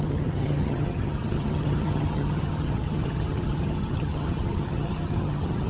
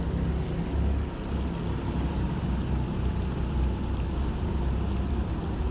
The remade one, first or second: first